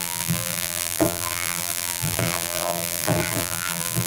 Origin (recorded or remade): remade